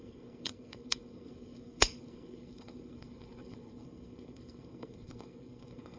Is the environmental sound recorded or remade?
remade